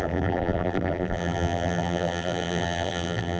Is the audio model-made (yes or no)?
yes